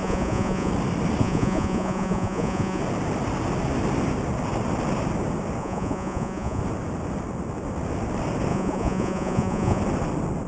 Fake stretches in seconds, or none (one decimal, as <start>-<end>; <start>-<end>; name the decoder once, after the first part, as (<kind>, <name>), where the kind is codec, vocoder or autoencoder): 0.0-0.7 (vocoder, Vocos); 1.2-2.8; 5.6-6.6; 8.5-9.8